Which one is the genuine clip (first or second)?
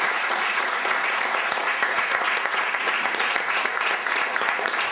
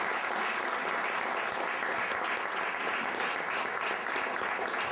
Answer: second